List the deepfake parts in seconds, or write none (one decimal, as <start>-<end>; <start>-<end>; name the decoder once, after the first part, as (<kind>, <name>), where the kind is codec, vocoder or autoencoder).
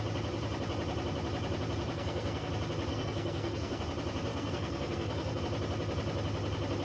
1.9-2.5 (codec, SNAC); 2.9-3.8; 4.3-5.4